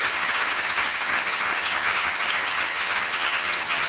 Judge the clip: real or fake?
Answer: fake